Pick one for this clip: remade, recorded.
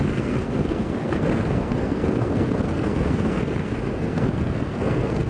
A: remade